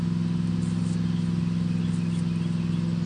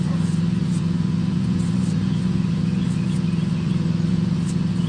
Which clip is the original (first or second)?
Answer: first